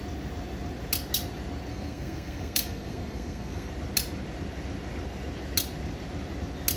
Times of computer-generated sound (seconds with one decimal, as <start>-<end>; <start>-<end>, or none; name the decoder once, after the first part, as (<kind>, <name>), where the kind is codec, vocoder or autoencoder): 1.7-3.7 (codec, SNAC)